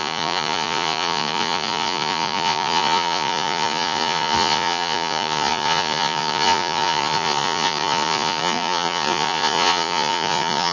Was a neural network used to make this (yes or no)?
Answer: yes